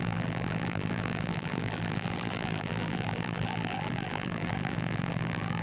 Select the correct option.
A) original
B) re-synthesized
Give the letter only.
B